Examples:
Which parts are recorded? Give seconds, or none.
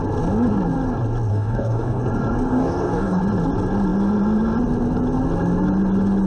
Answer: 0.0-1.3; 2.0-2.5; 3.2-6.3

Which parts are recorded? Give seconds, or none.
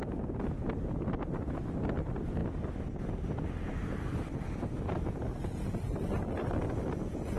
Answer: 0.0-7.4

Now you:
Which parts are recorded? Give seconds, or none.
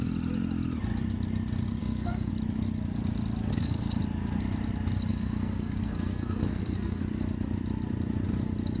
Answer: 0.0-1.8; 2.3-3.5; 4.0-5.1; 7.0-8.8